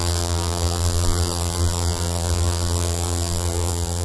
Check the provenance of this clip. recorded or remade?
remade